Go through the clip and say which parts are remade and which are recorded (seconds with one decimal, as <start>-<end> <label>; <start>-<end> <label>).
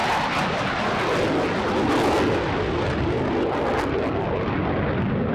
0.0-5.3 recorded